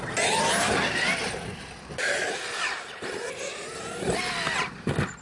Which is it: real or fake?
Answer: real